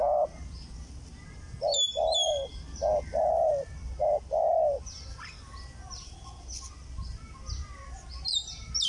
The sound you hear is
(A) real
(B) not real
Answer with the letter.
A